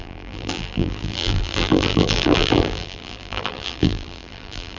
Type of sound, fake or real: fake